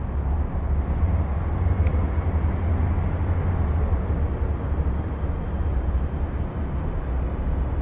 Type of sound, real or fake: real